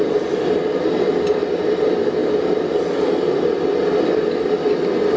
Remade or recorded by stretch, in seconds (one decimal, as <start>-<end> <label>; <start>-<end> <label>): 0.0-5.2 recorded